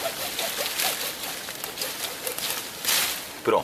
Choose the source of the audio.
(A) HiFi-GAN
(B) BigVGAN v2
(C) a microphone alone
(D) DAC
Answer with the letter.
C